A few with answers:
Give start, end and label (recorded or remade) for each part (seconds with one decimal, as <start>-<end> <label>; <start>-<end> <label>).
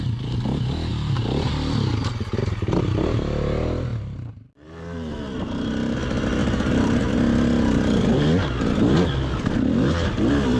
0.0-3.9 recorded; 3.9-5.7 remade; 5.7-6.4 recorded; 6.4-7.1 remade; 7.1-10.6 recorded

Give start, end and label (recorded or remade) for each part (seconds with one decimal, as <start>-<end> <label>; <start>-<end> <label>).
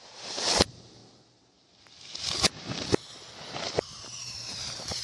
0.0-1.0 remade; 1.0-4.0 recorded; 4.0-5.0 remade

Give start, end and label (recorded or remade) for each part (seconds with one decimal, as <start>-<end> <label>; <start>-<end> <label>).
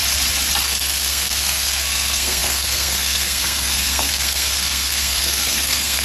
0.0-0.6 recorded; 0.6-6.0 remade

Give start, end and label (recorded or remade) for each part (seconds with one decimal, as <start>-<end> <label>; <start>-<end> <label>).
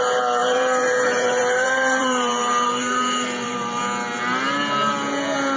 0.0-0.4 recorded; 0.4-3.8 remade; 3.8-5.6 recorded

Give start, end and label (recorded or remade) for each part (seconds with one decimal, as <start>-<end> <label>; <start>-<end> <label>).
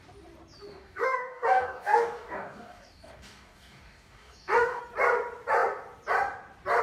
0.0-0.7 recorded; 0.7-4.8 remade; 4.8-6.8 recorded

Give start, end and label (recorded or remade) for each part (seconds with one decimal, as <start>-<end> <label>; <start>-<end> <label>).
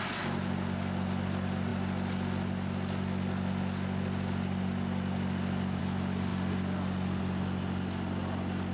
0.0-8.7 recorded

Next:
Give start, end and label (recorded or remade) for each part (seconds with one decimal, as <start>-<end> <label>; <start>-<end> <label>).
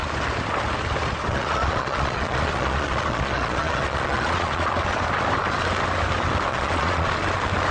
0.0-1.3 recorded; 1.3-4.7 remade; 4.7-6.5 recorded; 6.5-7.1 remade; 7.1-7.7 recorded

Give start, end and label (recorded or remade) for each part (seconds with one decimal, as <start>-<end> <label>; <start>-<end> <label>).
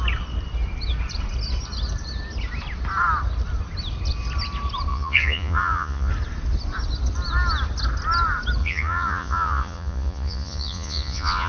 0.0-4.9 recorded; 4.9-6.1 remade; 6.1-8.6 recorded; 8.6-11.5 remade